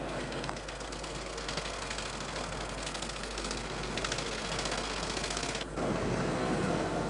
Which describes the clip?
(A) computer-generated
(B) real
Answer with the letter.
A